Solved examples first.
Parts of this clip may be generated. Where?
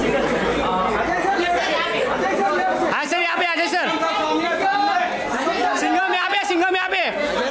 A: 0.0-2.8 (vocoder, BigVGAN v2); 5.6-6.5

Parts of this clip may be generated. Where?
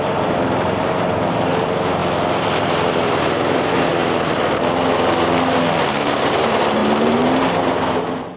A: 0.0-2.0 (vocoder, BigVGAN v2); 3.2-3.9; 5.8-8.4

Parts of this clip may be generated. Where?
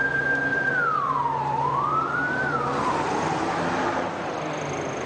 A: 0.5-3.6 (vocoder, BigVGAN v2)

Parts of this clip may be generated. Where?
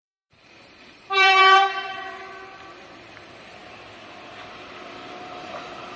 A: 0.0-2.0 (vocoder, BigVGAN v2); 2.7-3.6; 5.2-6.0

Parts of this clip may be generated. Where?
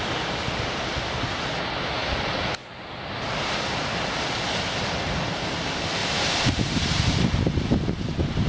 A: 6.0-7.0 (vocoder, BigVGAN v2)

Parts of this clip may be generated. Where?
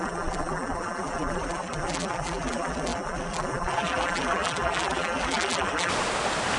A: 0.0-5.9 (vocoder, BigVGAN v2)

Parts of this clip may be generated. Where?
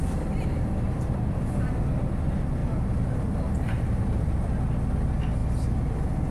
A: 0.0-1.4 (vocoder, BigVGAN v2); 2.6-4.2